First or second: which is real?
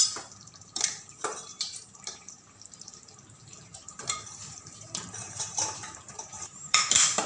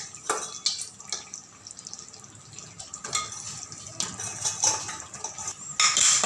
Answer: second